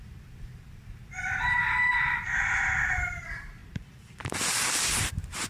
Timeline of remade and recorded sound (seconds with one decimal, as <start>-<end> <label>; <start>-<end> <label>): 0.0-1.0 remade; 1.0-1.9 recorded; 1.9-3.6 remade; 3.6-5.1 recorded; 5.1-5.5 remade